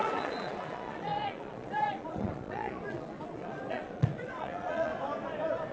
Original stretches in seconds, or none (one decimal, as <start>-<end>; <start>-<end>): 4.9-5.7